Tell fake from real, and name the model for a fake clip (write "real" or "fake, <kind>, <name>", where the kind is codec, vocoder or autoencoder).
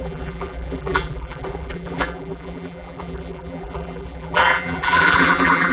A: fake, vocoder, BigVGAN v2